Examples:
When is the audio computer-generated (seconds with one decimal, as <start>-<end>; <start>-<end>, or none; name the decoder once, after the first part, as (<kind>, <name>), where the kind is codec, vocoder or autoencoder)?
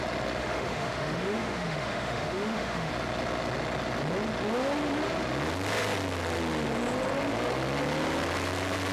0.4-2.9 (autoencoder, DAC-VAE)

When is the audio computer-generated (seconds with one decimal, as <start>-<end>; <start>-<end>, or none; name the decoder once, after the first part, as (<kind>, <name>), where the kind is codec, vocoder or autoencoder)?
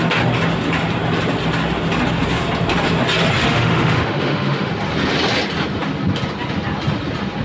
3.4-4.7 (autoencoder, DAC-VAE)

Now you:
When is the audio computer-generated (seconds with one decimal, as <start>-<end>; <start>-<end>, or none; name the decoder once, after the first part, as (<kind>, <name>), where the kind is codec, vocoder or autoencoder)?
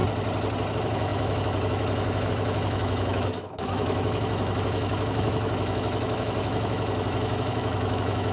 0.7-8.3 (autoencoder, DAC-VAE)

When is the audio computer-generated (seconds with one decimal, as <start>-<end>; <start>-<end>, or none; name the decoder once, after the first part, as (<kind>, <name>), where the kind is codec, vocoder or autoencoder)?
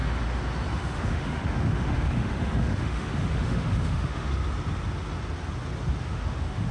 0.7-4.3 (autoencoder, DAC-VAE); 6.0-6.7